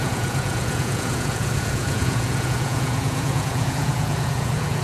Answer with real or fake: fake